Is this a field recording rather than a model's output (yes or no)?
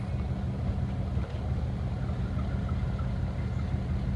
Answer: yes